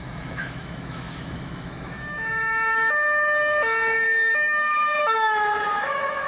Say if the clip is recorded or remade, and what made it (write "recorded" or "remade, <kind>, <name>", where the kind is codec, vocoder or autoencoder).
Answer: remade, autoencoder, DAC-VAE